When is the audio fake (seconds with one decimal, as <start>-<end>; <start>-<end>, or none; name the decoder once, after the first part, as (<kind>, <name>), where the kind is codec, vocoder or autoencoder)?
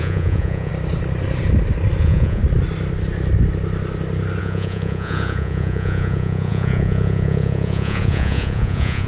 0.0-0.7 (vocoder, Vocos); 2.0-2.4; 4.4-9.1